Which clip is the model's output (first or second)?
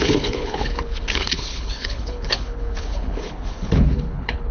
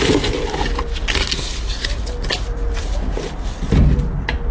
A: first